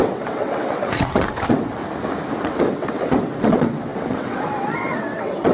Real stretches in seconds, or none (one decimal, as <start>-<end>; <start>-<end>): 1.8-2.4